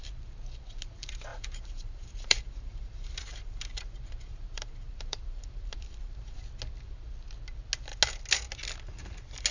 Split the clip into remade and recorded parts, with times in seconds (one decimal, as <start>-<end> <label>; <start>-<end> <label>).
0.0-1.3 recorded; 1.3-6.4 remade; 6.4-9.5 recorded

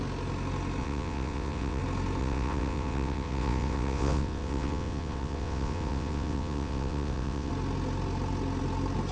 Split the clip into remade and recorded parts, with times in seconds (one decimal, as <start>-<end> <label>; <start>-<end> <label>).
0.0-0.8 recorded; 0.8-1.8 remade; 1.8-2.2 recorded; 2.2-7.5 remade; 7.5-9.1 recorded

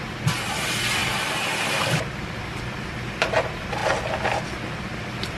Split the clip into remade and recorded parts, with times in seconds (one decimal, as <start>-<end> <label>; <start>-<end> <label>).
0.0-1.0 recorded; 1.0-2.6 remade; 2.6-5.4 recorded

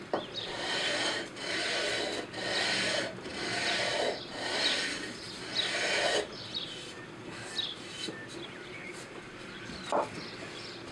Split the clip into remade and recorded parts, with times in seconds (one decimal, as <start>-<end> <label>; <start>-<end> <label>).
0.0-3.3 recorded; 3.3-4.3 remade; 4.3-10.9 recorded

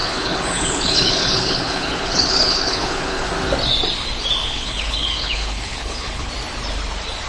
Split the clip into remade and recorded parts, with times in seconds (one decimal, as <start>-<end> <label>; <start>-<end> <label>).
0.0-3.3 remade; 3.3-4.4 recorded; 4.4-6.3 remade; 6.3-7.3 recorded

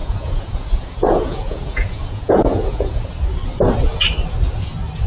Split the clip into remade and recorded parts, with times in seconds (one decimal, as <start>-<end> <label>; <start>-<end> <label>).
0.0-3.1 remade; 3.1-5.1 recorded

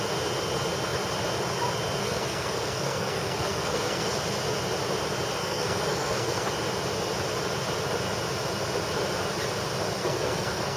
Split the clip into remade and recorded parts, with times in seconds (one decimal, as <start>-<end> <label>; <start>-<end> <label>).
0.0-2.0 recorded; 2.0-4.1 remade; 4.1-5.4 recorded; 5.4-6.5 remade; 6.5-10.0 recorded; 10.0-10.8 remade